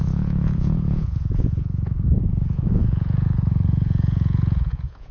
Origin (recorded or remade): remade